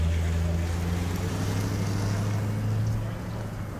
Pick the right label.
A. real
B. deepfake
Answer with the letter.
A